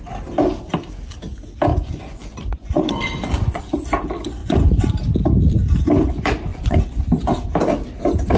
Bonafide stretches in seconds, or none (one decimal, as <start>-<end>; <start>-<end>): 0.0-1.7; 3.6-4.4; 4.9-6.5; 7.1-8.4